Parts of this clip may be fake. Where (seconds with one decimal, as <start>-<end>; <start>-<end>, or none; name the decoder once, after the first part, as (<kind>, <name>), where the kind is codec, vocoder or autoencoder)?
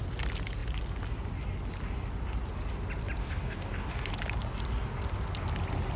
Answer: 3.2-4.1 (codec, DAC)